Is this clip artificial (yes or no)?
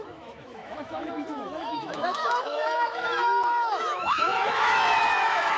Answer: yes